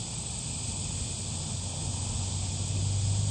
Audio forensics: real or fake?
real